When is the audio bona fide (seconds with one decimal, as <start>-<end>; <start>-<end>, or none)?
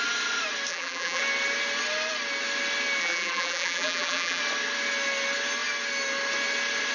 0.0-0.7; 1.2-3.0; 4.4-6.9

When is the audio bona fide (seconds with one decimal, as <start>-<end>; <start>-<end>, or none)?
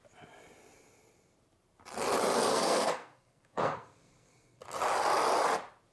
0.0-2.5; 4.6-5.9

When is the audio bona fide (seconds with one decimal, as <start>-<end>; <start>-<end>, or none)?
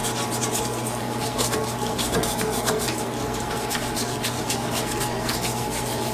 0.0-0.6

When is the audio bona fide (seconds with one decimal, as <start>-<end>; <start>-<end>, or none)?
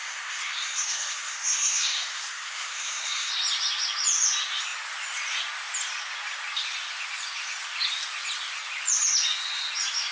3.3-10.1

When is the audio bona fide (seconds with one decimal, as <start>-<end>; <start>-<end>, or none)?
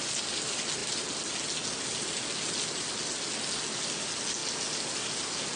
0.0-5.6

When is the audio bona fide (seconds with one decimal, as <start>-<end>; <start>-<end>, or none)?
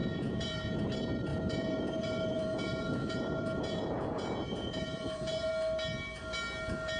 0.8-1.3; 5.5-7.0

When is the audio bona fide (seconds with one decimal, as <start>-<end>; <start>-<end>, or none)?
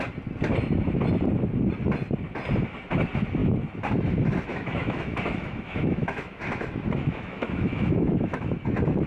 0.0-4.5; 8.4-9.1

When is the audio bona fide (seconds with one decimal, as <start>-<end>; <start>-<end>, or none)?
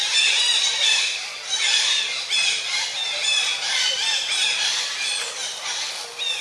0.0-6.4